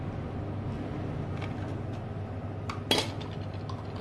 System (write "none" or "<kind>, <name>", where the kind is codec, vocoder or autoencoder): none